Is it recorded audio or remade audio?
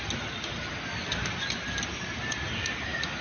recorded